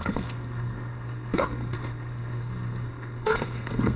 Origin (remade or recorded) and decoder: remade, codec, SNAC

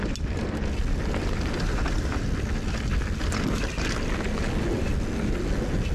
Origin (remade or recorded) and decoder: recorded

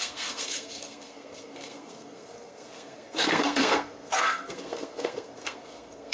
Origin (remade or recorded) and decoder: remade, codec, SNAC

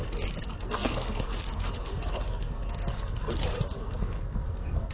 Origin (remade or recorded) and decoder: remade, codec, SNAC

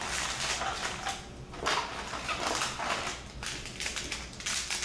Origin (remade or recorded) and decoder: recorded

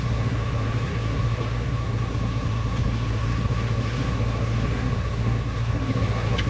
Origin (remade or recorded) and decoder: remade, codec, SNAC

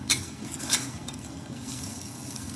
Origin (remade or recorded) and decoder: remade, codec, SNAC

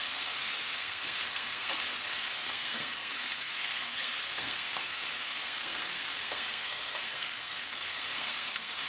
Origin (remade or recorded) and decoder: remade, codec, SNAC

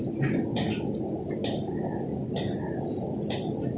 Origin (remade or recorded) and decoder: recorded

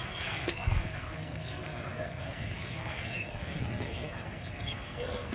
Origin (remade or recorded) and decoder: remade, codec, SNAC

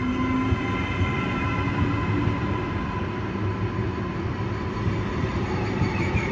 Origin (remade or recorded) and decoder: recorded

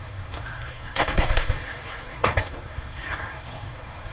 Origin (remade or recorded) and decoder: remade, codec, SNAC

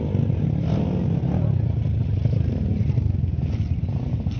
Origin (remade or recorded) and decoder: recorded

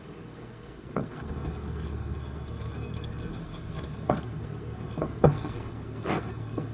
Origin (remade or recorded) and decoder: remade, codec, SNAC